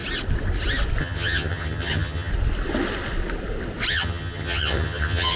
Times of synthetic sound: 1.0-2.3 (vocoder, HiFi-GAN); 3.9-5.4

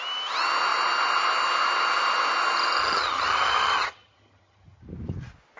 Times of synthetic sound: 2.8-4.8 (vocoder, HiFi-GAN)

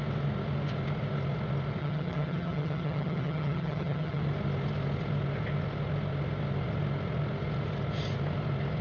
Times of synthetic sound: 1.8-4.2 (vocoder, HiFi-GAN)

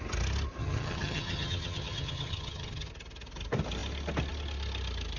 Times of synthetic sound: 0.6-2.9 (vocoder, HiFi-GAN)